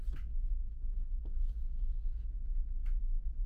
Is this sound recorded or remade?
recorded